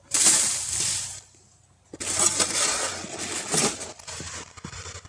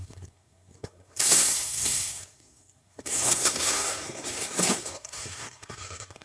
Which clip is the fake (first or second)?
second